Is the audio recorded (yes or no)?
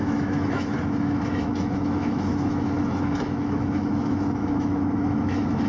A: no